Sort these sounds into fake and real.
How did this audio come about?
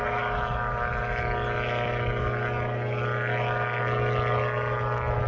real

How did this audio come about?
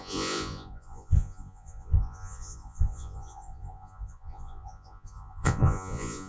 fake